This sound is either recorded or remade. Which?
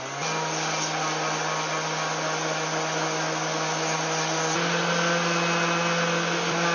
recorded